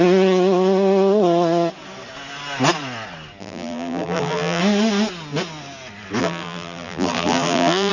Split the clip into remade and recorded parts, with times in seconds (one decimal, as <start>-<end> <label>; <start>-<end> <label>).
0.0-3.4 recorded; 3.4-4.6 remade; 4.6-6.2 recorded; 6.2-7.9 remade